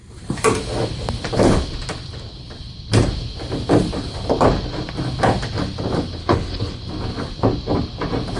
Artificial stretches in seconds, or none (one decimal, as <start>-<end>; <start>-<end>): 6.2-6.8